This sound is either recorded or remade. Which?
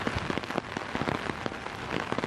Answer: recorded